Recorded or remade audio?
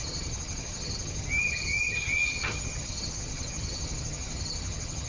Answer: remade